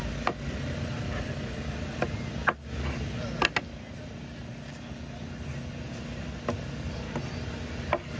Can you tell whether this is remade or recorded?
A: recorded